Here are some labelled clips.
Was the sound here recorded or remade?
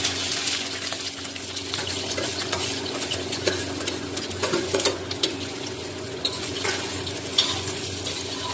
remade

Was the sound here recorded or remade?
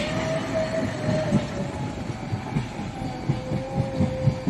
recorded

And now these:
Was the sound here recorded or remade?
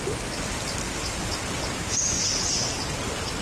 recorded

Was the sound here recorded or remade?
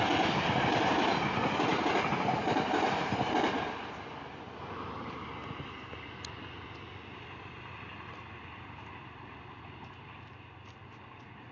recorded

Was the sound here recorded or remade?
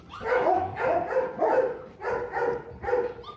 recorded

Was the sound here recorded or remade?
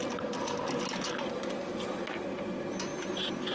recorded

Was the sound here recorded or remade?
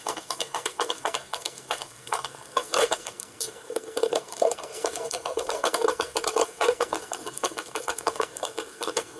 remade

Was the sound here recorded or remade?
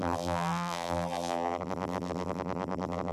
remade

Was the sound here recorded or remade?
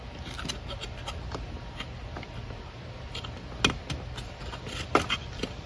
recorded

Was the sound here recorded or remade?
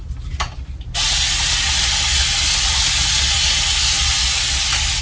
recorded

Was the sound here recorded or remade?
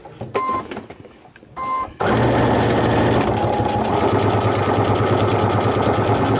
recorded